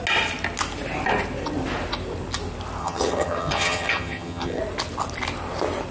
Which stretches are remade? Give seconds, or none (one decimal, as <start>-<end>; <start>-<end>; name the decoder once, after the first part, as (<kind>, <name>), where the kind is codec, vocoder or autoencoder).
2.8-4.6 (vocoder, HiFi-GAN)